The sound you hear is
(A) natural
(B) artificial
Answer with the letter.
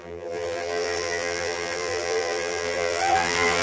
B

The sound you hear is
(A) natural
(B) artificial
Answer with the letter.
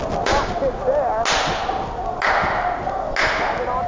A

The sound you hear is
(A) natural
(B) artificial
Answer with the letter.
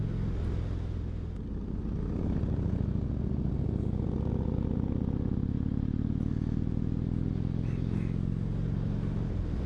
A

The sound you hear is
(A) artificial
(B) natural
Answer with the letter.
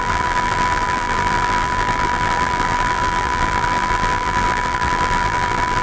A